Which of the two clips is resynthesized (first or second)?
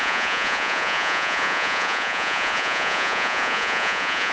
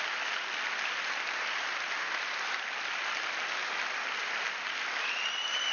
first